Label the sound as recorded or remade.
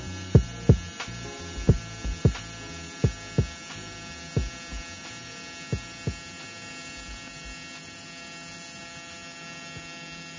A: recorded